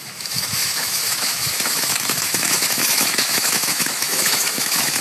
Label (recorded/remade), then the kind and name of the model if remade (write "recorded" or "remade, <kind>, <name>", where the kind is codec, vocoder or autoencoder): remade, autoencoder, DAC-VAE